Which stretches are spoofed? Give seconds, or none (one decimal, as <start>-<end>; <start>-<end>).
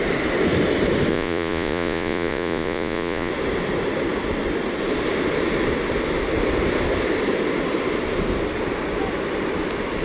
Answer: 1.1-3.3